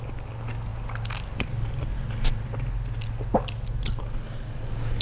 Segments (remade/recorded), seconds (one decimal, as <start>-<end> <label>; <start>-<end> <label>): 0.0-5.0 recorded